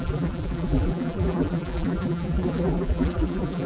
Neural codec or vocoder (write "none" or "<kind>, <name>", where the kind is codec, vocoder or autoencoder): vocoder, BigVGAN v2